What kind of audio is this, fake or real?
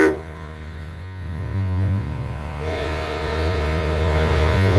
fake